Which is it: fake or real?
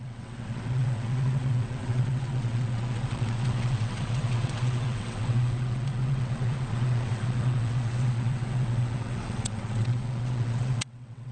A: fake